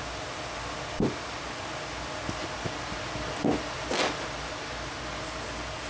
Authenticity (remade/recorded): recorded